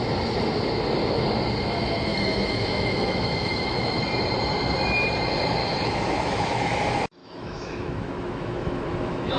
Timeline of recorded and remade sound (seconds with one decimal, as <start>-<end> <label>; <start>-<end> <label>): 0.0-2.1 recorded; 2.1-4.0 remade; 4.0-5.6 recorded; 5.6-6.7 remade; 6.7-7.2 recorded; 7.2-9.4 remade